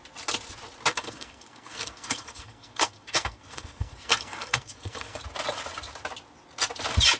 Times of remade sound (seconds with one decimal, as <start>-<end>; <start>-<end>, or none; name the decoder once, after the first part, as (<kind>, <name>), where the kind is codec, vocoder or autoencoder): 0.9-5.2 (codec, SNAC)